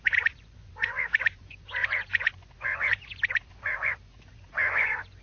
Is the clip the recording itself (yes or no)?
no